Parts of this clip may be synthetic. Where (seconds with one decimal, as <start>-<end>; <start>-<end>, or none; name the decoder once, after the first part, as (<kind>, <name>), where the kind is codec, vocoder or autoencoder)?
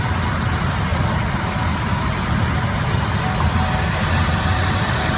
none